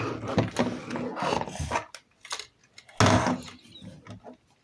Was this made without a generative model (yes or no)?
yes